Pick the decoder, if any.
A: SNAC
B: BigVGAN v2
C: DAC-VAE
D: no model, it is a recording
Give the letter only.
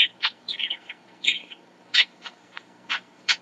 A